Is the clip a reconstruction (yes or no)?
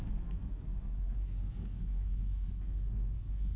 yes